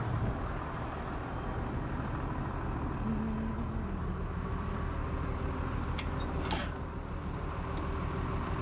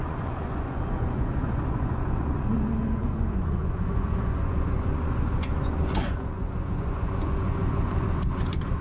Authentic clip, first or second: first